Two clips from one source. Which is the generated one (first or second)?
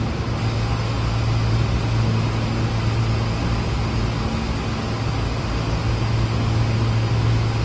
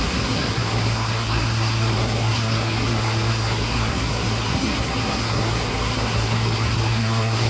second